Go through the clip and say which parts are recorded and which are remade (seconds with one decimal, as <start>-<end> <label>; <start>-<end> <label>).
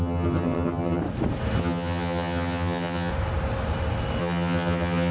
0.0-1.0 remade; 1.0-1.6 recorded; 1.6-3.1 remade; 3.1-4.2 recorded; 4.2-5.1 remade